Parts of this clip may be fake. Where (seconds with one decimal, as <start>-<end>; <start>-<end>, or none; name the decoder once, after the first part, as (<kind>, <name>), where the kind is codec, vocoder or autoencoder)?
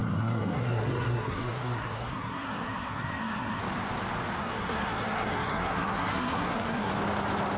0.0-3.6 (codec, SNAC); 4.4-6.9